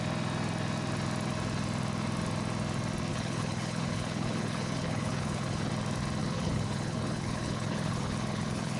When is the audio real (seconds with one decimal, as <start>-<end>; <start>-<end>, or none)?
0.0-3.1; 5.7-6.2